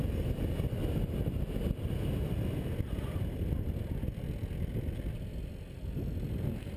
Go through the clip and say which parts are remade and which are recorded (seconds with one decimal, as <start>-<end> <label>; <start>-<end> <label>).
0.0-6.8 recorded